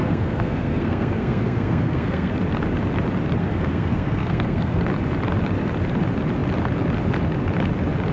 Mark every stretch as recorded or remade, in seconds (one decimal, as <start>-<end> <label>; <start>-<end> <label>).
0.0-2.3 remade; 2.3-3.4 recorded; 3.4-4.9 remade; 4.9-8.1 recorded